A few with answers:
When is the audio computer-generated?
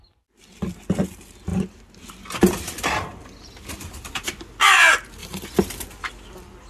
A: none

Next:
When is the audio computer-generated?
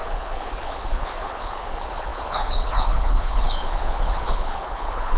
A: 0.0-5.2 (codec, HILCodec)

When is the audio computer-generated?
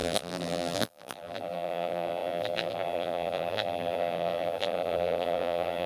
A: 0.0-5.9 (vocoder, BigVGAN v2)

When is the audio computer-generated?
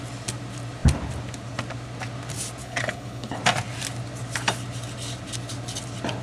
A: 2.6-3.4 (codec, HILCodec)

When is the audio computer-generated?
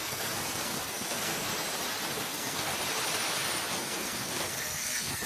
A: 0.0-1.5 (codec, SNAC); 2.2-2.7; 3.7-5.3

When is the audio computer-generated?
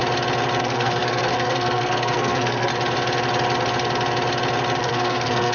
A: 0.6-2.7 (codec, SNAC); 4.8-5.5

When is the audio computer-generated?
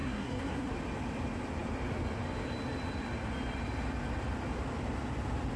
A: 0.0-0.7 (codec, SNAC)